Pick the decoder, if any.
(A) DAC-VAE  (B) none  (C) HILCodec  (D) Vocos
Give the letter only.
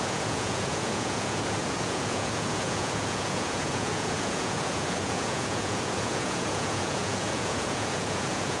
D